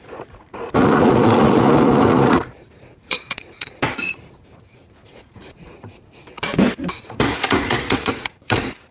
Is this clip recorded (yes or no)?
no